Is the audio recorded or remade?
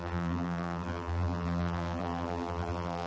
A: remade